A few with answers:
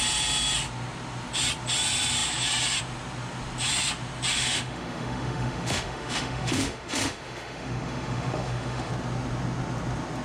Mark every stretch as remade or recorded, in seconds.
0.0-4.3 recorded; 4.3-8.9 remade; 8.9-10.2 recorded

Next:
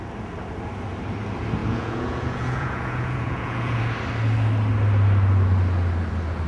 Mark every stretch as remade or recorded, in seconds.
0.0-1.6 recorded; 1.6-3.8 remade; 3.8-6.5 recorded